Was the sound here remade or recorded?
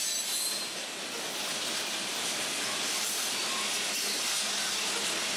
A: recorded